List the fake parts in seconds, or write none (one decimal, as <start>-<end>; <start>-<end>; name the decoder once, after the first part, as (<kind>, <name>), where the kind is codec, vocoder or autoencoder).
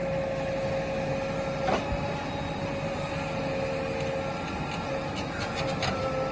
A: none